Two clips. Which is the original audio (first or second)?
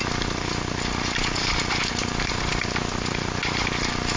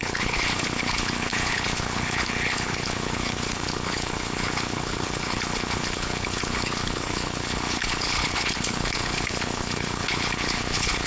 first